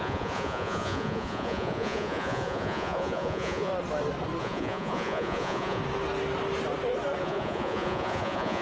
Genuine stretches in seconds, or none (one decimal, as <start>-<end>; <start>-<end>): 3.7-4.4; 5.8-7.2